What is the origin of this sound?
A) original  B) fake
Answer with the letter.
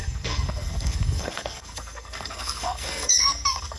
B